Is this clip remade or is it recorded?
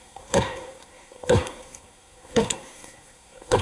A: remade